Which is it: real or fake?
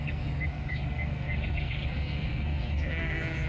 fake